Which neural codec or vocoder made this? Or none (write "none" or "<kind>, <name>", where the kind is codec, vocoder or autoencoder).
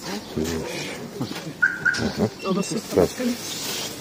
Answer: none